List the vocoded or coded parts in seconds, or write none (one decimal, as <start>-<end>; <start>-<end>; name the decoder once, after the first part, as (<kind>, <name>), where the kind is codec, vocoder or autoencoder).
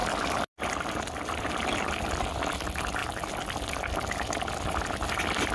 none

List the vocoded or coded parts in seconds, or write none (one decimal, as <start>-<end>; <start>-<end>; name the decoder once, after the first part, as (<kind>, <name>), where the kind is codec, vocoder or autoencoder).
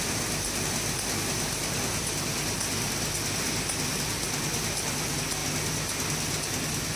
none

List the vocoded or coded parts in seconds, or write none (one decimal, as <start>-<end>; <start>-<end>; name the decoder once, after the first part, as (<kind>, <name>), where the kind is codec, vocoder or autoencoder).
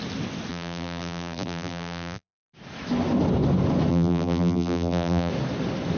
0.5-2.5 (vocoder, BigVGAN v2); 3.9-5.3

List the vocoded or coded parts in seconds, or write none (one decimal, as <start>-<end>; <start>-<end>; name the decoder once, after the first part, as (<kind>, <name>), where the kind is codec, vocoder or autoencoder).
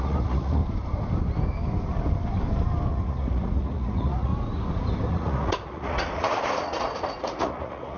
0.0-0.6 (vocoder, Vocos); 2.9-4.3; 5.1-8.0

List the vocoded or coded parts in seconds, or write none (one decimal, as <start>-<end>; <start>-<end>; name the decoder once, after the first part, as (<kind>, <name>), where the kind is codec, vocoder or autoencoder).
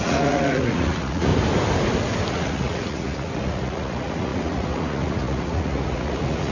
0.0-1.3 (vocoder, Vocos); 2.3-6.5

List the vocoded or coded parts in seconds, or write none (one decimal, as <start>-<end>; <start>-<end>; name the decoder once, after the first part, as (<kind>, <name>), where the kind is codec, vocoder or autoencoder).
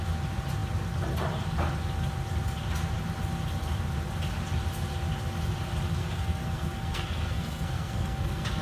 6.0-8.6 (codec, SNAC)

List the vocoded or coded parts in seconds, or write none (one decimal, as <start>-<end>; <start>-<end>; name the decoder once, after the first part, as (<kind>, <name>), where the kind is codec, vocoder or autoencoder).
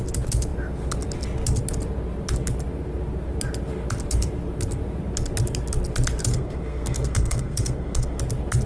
6.3-8.2 (codec, SNAC)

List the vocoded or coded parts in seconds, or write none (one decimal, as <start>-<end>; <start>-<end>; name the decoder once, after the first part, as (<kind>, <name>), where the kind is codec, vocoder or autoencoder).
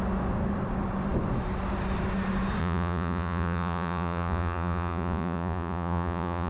2.6-6.5 (vocoder, Vocos)